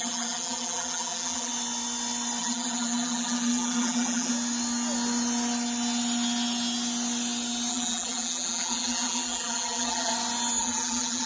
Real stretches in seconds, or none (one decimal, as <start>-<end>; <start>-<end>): 1.5-2.4; 4.3-7.7; 10.1-10.6